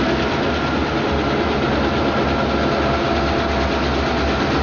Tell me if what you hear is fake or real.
real